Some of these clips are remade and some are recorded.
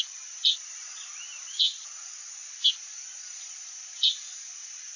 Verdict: recorded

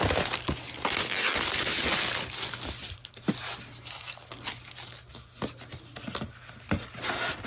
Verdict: recorded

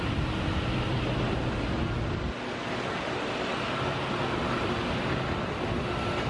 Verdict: recorded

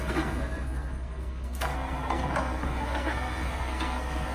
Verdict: remade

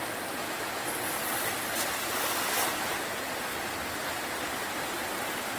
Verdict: recorded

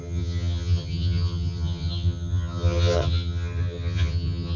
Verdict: remade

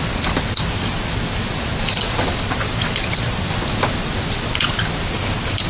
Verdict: recorded